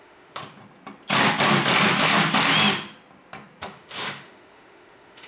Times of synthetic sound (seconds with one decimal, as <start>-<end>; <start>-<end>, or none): 0.0-0.4; 3.6-5.3